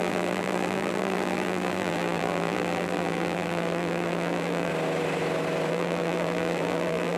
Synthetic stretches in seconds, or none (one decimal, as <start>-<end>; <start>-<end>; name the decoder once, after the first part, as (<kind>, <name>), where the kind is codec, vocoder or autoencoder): 0.0-4.7 (vocoder, BigVGAN v2); 5.7-7.2